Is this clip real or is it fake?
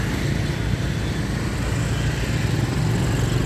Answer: real